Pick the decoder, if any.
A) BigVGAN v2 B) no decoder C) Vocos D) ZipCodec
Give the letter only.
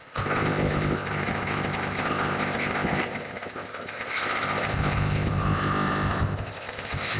D